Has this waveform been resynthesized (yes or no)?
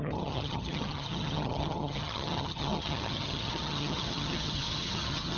yes